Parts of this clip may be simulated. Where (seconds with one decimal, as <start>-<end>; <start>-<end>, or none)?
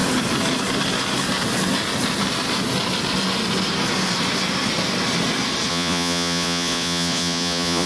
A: 5.7-7.9